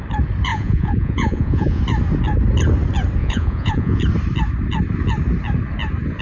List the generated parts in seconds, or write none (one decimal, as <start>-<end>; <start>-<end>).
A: 0.5-1.8; 3.2-4.0